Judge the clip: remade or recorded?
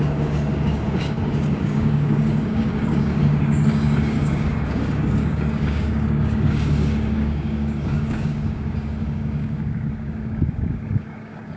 remade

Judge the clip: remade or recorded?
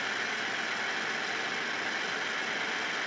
recorded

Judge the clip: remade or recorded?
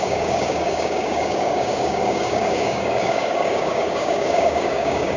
remade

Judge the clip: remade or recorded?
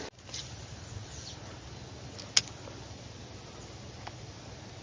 recorded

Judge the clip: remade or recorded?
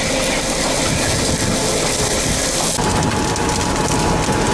recorded